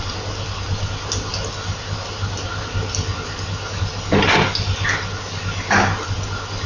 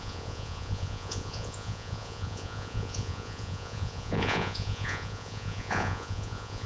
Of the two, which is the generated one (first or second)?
second